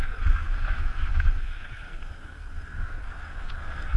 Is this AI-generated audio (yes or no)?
yes